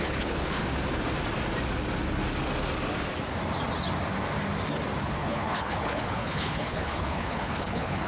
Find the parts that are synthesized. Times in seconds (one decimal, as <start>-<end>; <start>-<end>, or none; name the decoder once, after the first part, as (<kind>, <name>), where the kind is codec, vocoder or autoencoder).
0.0-0.6 (codec, HILCodec); 5.0-8.1